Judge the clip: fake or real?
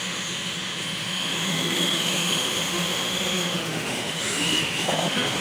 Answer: fake